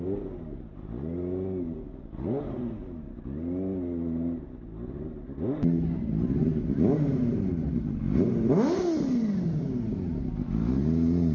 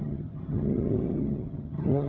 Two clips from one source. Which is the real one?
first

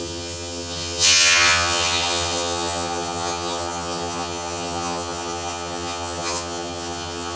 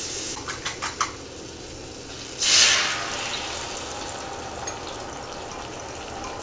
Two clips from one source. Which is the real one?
second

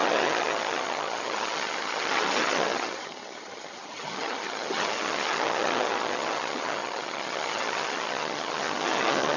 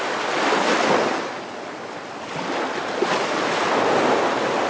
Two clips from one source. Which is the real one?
second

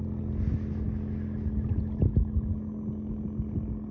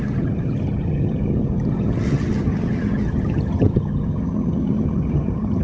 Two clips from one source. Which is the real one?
first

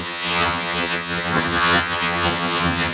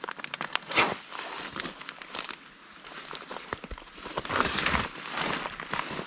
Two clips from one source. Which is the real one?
second